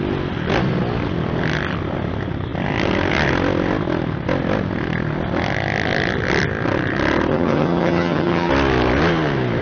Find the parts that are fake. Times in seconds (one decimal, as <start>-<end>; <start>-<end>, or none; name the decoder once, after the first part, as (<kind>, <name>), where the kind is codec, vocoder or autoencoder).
7.3-8.5 (vocoder, HiFi-GAN)